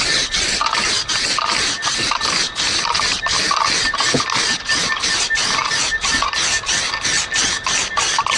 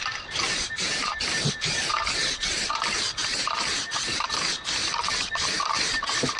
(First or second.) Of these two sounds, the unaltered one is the first